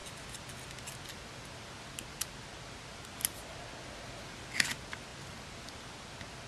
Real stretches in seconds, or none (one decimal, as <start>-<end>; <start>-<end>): 0.0-6.5